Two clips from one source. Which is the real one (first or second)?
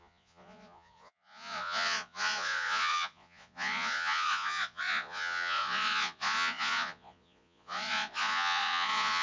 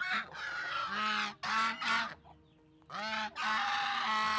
second